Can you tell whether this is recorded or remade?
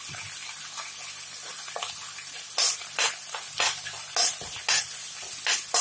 recorded